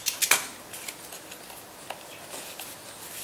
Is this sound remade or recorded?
recorded